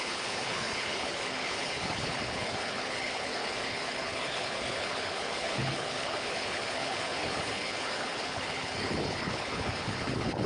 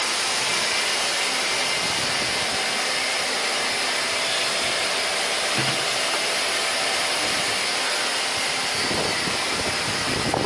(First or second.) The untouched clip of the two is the second